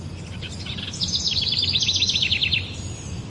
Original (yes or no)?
yes